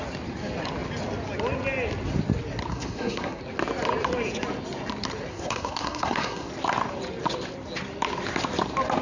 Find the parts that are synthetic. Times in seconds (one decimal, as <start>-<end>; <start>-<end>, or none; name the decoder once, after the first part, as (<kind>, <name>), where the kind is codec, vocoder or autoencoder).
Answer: 2.7-3.4 (codec, SNAC); 5.3-6.5

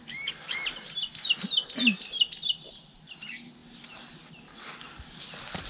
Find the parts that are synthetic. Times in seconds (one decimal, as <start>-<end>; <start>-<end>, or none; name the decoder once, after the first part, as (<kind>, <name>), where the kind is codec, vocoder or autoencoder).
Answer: 0.0-0.6 (codec, DAC); 4.5-5.2

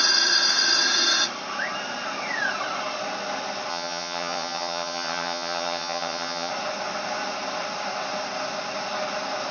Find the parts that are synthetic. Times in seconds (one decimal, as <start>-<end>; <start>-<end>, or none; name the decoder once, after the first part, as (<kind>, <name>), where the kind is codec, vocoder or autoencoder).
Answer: 3.7-6.5 (vocoder, HiFi-GAN)

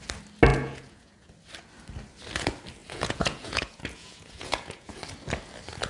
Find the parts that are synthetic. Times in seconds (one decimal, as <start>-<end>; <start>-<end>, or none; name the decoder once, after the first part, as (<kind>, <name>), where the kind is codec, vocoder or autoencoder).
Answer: 0.5-1.3 (vocoder, Vocos); 2.8-5.0

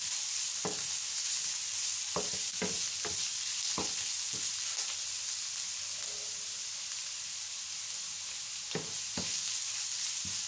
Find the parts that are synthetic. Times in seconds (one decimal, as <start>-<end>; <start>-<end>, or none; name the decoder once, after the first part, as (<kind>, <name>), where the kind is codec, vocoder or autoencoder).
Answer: none